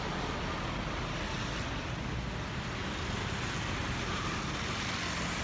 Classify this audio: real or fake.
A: real